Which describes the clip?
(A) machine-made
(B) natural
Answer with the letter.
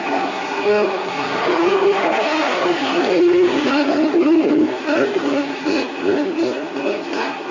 A